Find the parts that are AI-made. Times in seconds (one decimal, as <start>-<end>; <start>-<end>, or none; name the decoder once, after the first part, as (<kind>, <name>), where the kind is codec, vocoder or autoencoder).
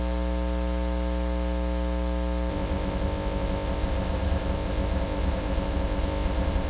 2.5-6.7 (codec, ZipCodec)